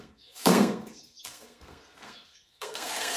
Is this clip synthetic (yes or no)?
yes